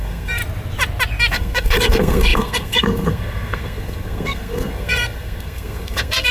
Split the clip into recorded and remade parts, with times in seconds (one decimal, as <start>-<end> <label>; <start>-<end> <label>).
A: 0.0-0.4 remade; 0.4-1.3 recorded; 1.3-6.3 remade

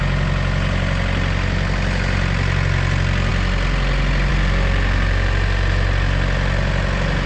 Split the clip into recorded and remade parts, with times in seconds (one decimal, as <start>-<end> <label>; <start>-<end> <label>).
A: 0.0-7.3 recorded

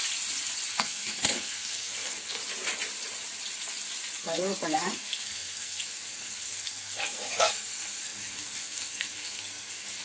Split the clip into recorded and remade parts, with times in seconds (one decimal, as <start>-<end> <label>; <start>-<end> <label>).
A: 0.0-0.7 recorded; 0.7-2.4 remade; 2.4-4.2 recorded; 4.2-10.0 remade

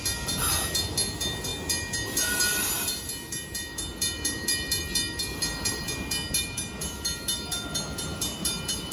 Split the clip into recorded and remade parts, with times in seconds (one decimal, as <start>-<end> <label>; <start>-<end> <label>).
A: 0.0-8.9 recorded